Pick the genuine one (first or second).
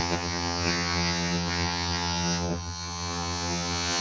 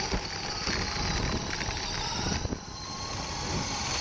second